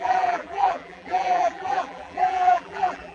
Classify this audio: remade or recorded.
remade